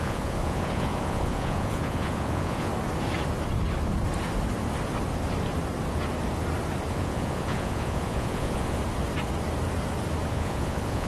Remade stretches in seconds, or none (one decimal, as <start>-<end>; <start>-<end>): 0.0-2.7; 6.9-8.8; 10.3-11.1